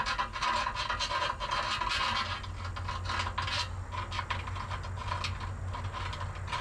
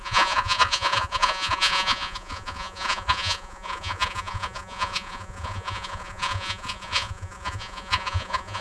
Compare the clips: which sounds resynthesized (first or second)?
second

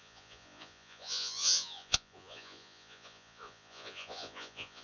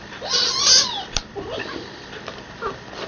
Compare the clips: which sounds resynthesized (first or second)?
first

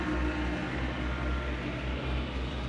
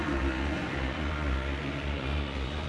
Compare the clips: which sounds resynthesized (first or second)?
second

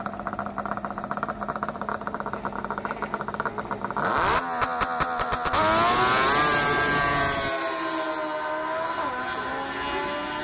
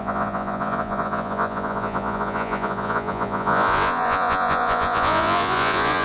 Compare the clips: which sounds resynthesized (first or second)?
second